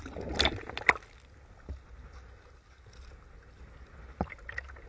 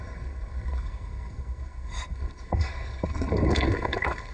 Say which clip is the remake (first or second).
second